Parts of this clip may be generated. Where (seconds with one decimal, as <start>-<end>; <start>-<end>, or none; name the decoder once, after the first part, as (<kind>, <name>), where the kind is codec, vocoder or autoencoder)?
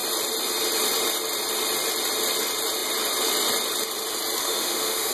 4.4-5.1 (autoencoder, DAC-VAE)